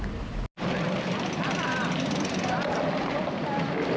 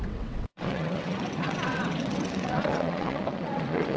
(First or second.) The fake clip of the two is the second